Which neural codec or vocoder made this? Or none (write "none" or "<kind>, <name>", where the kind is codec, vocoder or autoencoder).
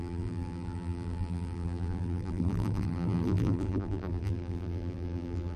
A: vocoder, BigVGAN v2